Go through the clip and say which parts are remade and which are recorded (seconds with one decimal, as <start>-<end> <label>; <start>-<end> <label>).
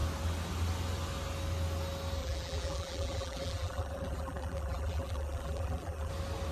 0.0-2.2 recorded; 2.2-6.1 remade; 6.1-6.5 recorded